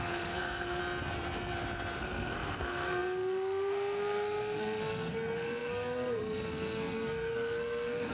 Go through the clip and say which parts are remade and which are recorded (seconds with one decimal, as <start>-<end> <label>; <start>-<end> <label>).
0.0-0.8 remade; 0.8-2.0 recorded; 2.0-8.1 remade